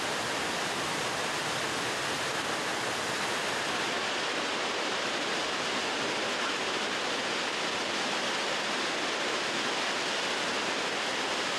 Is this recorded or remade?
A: recorded